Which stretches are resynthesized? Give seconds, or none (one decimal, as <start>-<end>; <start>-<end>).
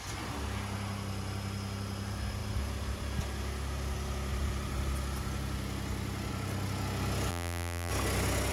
7.3-7.9